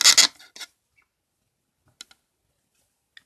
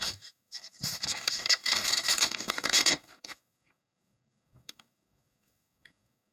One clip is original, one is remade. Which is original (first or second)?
first